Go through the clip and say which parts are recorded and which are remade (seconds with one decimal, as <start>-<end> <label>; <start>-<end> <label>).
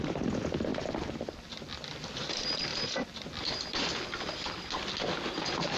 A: 0.0-2.7 remade; 2.7-5.2 recorded; 5.2-5.8 remade